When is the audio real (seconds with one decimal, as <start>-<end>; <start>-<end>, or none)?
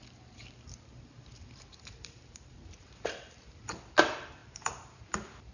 0.0-0.4; 3.7-4.4; 5.0-5.5